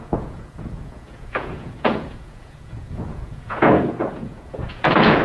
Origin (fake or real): fake